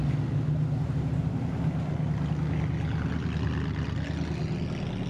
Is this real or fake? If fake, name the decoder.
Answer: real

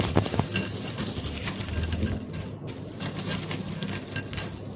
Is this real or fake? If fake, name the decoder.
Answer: real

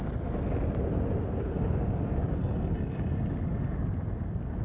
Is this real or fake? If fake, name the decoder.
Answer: real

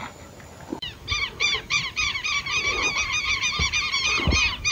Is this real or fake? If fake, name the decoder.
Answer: fake, vocoder, BigVGAN v2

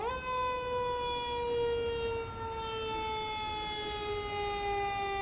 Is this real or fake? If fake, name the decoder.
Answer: real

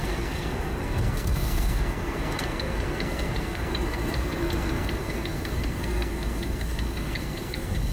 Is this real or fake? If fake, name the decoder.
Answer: fake, codec, SNAC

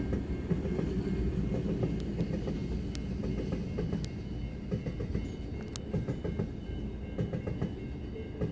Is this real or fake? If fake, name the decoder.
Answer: real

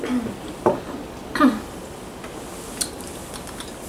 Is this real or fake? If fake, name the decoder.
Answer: real